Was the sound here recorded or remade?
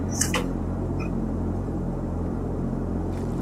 remade